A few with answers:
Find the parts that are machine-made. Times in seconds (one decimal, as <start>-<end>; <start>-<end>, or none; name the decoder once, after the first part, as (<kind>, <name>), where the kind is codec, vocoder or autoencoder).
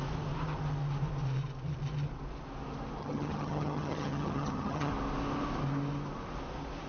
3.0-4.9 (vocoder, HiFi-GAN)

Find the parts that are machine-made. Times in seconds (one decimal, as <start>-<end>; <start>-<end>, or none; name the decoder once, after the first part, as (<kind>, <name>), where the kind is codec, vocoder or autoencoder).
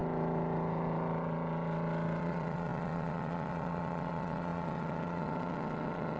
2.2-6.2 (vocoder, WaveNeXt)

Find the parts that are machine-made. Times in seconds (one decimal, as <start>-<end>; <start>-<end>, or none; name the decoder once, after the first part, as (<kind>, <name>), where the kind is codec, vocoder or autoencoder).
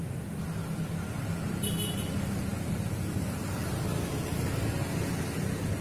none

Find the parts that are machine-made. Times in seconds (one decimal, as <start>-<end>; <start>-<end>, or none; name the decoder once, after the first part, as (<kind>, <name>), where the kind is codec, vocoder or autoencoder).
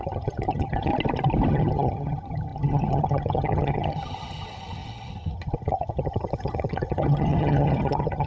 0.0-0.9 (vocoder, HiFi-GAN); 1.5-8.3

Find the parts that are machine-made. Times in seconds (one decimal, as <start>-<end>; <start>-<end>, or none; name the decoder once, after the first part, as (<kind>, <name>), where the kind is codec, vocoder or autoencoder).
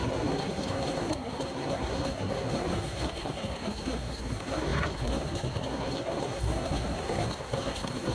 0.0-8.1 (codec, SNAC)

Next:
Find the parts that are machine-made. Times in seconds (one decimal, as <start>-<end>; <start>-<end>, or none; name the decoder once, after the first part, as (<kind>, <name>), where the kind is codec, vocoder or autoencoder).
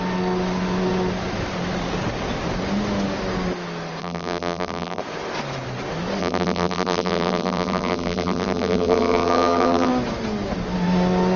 4.0-5.0 (vocoder, BigVGAN v2); 6.2-9.9